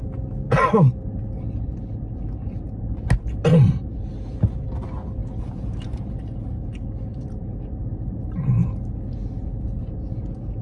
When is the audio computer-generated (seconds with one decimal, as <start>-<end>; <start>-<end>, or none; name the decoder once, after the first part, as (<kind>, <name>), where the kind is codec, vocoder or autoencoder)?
7.1-7.6 (vocoder, BigVGAN v2)